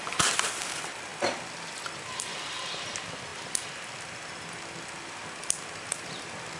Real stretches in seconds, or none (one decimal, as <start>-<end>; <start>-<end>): 1.1-1.7; 3.3-5.9